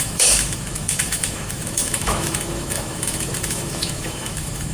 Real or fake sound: fake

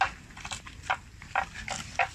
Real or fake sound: real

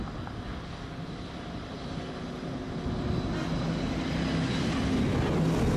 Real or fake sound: real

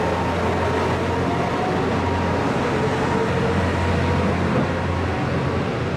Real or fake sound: real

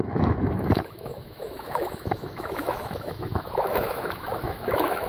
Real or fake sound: fake